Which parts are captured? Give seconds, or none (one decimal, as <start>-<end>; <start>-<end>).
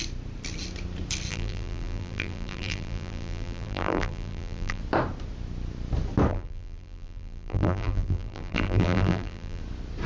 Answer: 0.0-1.3; 4.8-6.3; 9.6-10.1